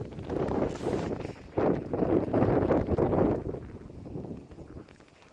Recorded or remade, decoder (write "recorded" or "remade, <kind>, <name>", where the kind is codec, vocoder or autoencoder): recorded